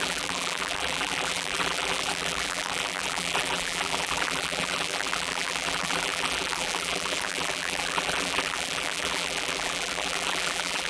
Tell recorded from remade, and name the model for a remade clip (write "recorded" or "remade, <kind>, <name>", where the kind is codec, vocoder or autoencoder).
remade, vocoder, BigVGAN v2